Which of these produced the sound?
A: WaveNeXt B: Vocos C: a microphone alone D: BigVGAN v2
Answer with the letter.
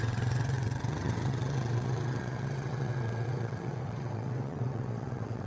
A